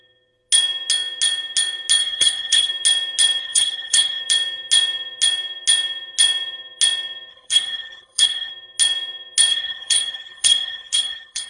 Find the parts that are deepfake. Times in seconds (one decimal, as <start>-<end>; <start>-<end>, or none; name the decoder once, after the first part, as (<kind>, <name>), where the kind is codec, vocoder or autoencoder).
2.0-2.7 (codec, HILCodec); 3.4-4.2; 7.3-8.5; 9.5-11.5